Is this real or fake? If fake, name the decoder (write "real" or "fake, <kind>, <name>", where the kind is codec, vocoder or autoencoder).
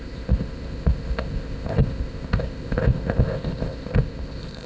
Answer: fake, codec, ZipCodec